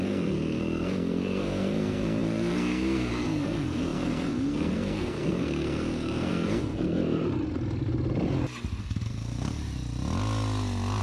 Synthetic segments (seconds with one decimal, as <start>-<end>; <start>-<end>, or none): 0.0-7.2; 8.8-9.6